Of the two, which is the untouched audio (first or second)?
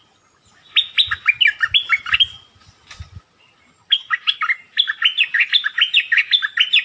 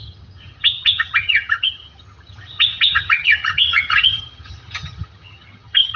first